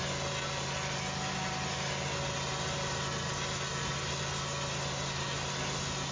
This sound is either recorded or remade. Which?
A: recorded